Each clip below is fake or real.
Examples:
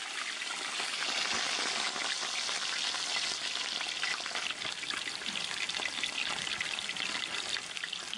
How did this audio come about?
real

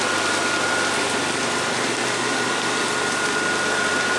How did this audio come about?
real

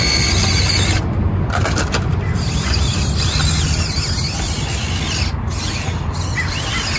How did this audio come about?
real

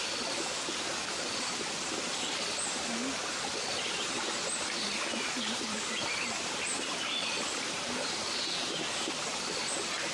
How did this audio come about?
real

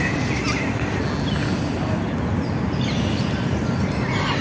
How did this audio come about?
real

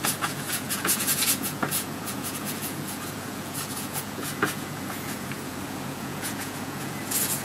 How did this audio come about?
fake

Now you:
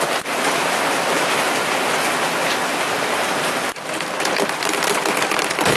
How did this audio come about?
real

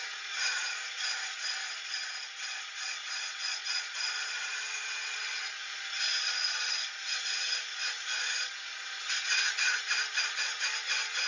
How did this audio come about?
fake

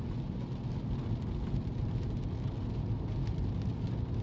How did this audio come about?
real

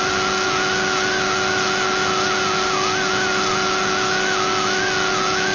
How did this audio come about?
real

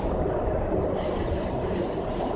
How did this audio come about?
real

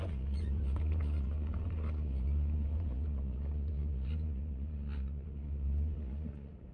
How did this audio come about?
fake